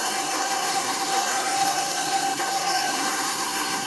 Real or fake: fake